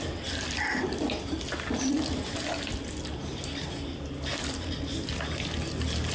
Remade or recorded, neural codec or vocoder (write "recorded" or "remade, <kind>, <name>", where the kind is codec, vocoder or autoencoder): recorded